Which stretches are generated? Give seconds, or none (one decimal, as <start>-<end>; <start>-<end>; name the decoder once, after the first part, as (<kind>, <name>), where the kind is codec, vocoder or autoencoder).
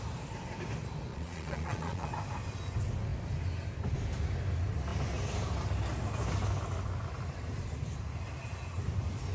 1.1-2.1 (vocoder, Vocos)